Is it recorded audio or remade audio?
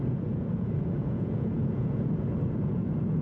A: remade